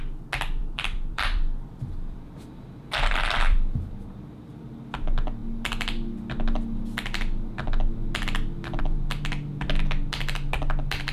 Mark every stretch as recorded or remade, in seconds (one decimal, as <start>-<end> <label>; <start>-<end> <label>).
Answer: 0.0-0.6 recorded; 0.6-4.5 remade; 4.5-11.1 recorded